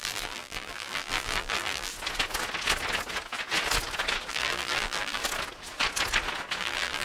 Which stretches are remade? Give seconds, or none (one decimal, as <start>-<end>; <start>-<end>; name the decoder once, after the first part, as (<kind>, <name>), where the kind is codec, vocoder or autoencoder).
0.0-1.9 (vocoder, BigVGAN v2); 4.3-5.2; 6.6-7.0